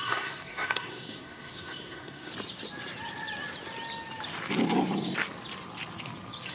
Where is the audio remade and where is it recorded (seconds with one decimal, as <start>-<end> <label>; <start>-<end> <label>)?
0.0-2.3 remade; 2.3-6.5 recorded